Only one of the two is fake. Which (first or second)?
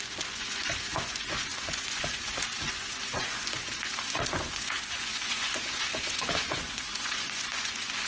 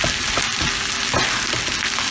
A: first